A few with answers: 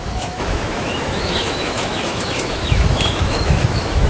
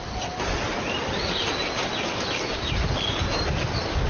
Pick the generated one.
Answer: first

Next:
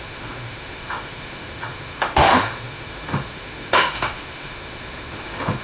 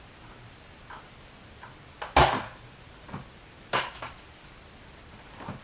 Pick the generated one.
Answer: first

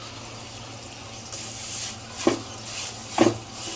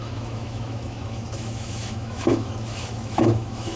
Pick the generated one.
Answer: second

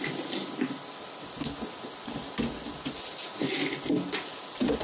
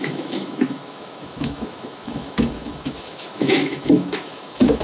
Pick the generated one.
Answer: second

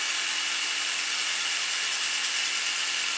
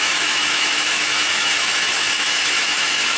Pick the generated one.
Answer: second